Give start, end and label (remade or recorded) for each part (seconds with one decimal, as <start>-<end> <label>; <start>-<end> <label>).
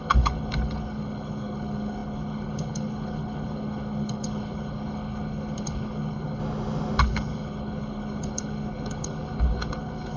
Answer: 0.0-6.4 remade; 6.4-7.0 recorded; 7.0-10.2 remade